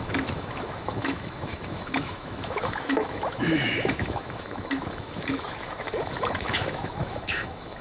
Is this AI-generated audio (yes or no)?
yes